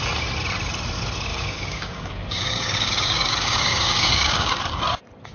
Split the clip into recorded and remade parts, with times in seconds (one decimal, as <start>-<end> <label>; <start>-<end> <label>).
0.0-1.3 recorded; 1.3-4.5 remade; 4.5-5.3 recorded